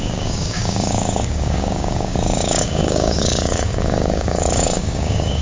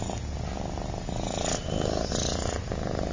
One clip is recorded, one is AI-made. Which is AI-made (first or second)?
first